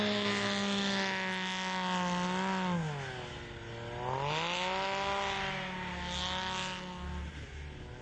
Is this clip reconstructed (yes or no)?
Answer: no